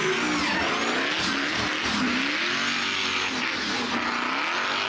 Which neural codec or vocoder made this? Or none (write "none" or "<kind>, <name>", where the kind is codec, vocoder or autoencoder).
none